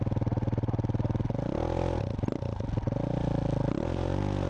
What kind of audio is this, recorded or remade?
recorded